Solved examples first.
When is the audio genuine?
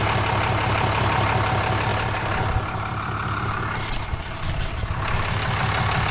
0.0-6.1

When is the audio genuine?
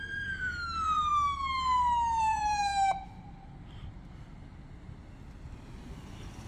1.1-2.2; 2.7-5.7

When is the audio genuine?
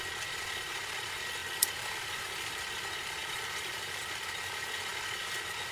0.0-1.4; 2.6-3.2; 3.8-5.7